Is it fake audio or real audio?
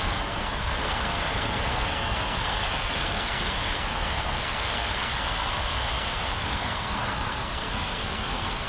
fake